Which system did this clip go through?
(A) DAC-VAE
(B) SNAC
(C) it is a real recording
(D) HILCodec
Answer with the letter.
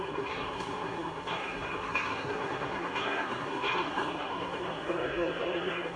B